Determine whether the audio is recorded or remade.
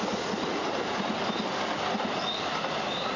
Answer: recorded